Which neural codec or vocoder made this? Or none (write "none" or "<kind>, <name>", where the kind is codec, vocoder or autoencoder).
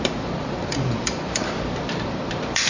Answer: vocoder, BigVGAN v2